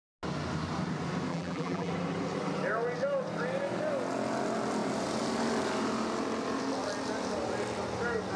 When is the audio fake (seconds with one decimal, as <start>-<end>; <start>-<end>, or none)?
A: 1.3-1.9